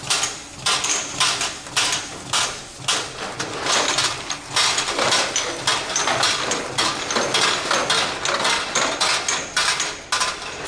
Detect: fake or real real